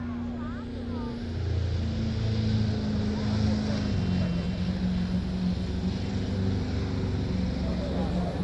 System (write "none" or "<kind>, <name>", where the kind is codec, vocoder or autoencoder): none